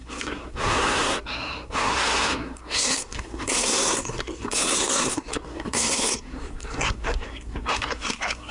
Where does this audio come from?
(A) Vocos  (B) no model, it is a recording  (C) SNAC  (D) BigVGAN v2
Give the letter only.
C